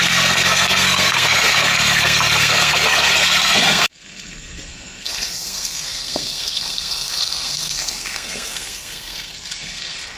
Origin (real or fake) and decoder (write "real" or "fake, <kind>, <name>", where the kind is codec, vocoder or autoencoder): fake, codec, SNAC